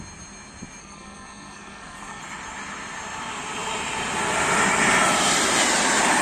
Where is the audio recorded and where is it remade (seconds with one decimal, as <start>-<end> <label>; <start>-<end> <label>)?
0.0-0.8 recorded; 0.8-2.2 remade; 2.2-6.2 recorded